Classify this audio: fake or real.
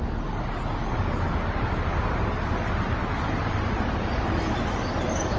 real